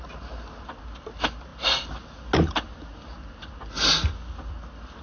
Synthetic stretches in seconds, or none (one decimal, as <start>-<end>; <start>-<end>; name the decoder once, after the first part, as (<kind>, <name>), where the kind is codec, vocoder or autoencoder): none